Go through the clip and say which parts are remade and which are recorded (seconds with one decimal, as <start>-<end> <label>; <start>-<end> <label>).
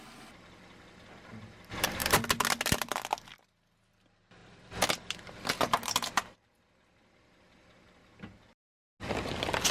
0.0-9.7 recorded